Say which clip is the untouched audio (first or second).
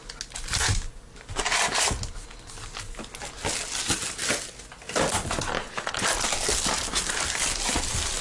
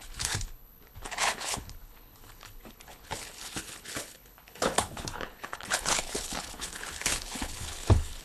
first